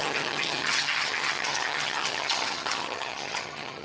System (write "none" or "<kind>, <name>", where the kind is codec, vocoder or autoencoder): vocoder, HiFi-GAN